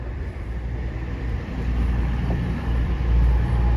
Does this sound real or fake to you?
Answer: fake